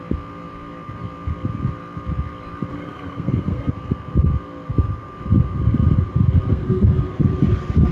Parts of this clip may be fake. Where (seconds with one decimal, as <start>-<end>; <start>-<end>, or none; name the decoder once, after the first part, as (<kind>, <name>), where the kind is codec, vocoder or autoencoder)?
2.7-3.7 (codec, SNAC); 6.5-7.0